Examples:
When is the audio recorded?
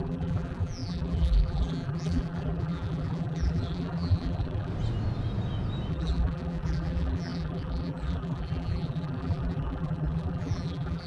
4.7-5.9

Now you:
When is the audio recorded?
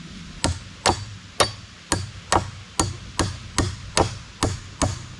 0.0-5.2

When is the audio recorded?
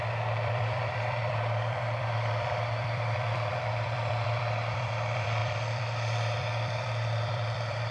none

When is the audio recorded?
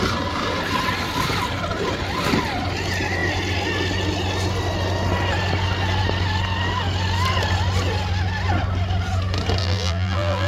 0.0-9.6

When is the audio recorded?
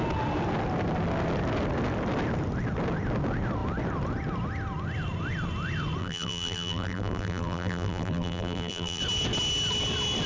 0.0-6.0; 9.0-10.3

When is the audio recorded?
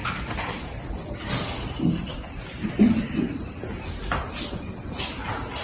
3.0-5.6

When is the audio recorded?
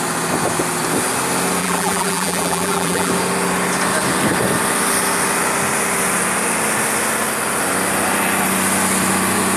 0.0-1.6; 3.1-9.6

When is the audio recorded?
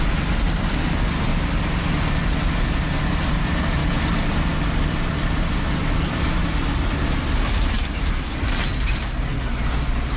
1.3-3.0; 3.8-5.9; 9.3-10.2